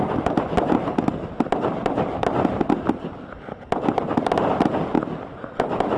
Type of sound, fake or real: real